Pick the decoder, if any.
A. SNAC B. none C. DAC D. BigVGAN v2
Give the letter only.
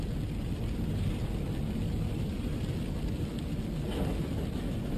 B